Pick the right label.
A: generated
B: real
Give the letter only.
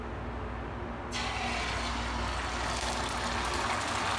B